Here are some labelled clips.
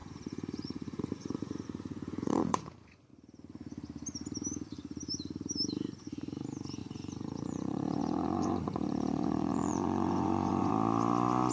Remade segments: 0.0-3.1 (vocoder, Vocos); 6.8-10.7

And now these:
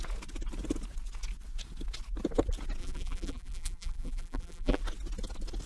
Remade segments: 2.8-4.8 (vocoder, BigVGAN v2)